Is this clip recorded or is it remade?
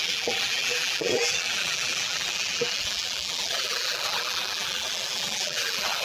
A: remade